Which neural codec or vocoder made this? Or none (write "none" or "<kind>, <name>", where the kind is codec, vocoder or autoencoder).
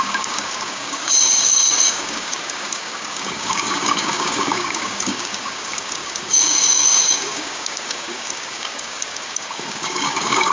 codec, DAC